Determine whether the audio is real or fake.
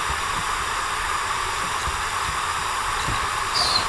fake